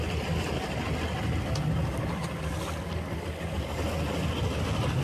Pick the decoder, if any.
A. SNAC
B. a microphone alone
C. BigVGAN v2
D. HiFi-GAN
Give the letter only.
B